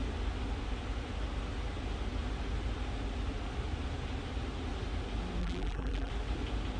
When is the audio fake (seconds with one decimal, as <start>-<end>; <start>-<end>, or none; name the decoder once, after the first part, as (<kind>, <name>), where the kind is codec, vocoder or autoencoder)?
5.4-6.1 (vocoder, BigVGAN v2)